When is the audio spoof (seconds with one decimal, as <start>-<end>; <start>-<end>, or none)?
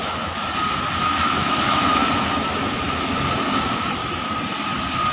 0.0-0.4; 1.0-4.0